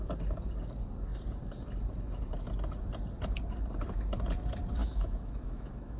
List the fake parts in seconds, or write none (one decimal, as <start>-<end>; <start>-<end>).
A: 4.8-6.0